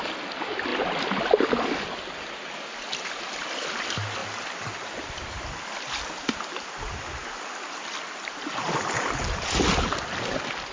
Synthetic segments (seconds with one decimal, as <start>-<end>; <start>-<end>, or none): none